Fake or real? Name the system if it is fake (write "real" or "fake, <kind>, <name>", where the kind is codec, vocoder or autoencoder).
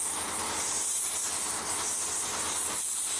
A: real